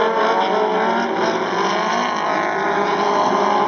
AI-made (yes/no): no